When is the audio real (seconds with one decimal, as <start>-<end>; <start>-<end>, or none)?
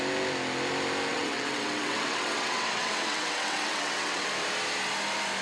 0.0-1.1; 4.3-5.4